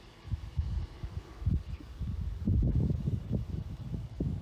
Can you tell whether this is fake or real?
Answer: fake